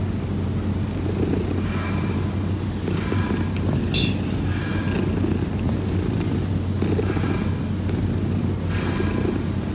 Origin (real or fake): real